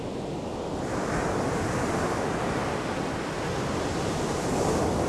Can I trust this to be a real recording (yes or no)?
yes